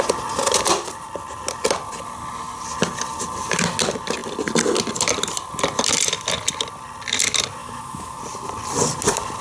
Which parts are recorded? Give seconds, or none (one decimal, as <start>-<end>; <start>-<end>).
0.0-7.6; 8.2-9.4